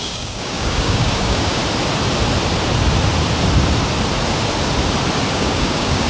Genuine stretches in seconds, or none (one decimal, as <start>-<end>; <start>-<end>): 1.6-5.3

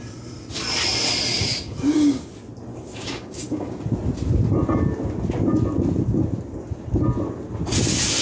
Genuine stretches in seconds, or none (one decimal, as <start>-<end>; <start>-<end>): 0.0-1.3; 2.3-2.7; 3.8-8.2

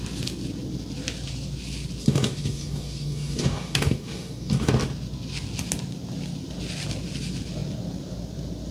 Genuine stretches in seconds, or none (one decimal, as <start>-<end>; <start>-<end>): 0.0-2.0; 4.7-8.7

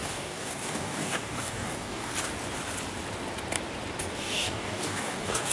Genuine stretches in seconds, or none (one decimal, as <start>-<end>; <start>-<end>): 2.1-4.0

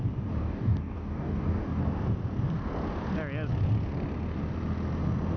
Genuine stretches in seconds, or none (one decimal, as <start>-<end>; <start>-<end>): 0.0-0.4; 1.8-5.4

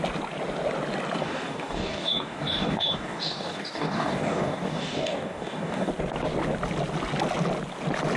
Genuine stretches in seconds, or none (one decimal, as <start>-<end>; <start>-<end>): 0.0-1.2; 5.9-8.2

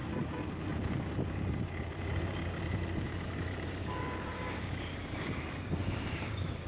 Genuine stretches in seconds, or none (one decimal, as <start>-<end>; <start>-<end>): 0.0-3.1